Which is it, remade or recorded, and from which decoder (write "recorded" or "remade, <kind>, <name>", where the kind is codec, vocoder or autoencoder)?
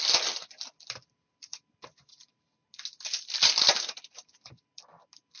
recorded